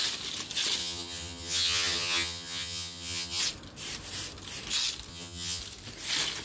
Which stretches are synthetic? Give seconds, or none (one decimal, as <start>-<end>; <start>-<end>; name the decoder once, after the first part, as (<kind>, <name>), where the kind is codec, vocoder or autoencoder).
0.8-3.4 (vocoder, HiFi-GAN); 5.1-5.6

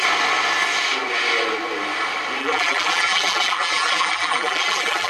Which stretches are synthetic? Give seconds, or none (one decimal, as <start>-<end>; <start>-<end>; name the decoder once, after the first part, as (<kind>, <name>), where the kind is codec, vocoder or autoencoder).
2.4-5.1 (vocoder, BigVGAN v2)

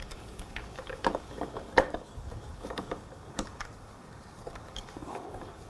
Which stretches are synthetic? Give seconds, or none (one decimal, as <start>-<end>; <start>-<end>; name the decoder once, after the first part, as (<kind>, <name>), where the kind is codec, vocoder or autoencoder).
0.0-5.7 (codec, DAC)

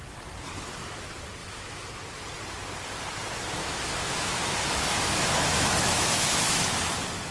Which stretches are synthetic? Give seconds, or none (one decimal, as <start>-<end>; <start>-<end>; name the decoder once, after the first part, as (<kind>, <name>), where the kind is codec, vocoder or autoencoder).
1.4-1.9 (autoencoder, DAC-VAE); 3.6-6.8